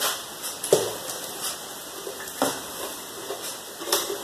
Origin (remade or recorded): recorded